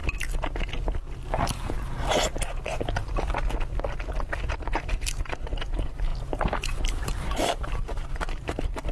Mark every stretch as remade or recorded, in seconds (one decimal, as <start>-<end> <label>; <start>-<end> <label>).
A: 0.0-4.5 recorded; 4.5-8.9 remade